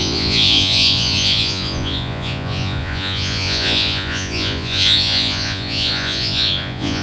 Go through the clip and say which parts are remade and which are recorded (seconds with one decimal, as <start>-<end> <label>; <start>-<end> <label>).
0.0-7.0 remade